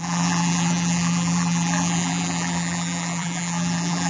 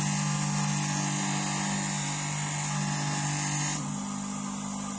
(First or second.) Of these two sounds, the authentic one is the second